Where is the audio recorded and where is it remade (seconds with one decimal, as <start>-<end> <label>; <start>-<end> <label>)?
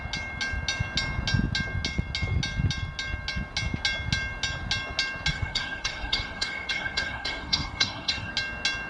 0.0-5.3 recorded; 5.3-8.3 remade; 8.3-8.9 recorded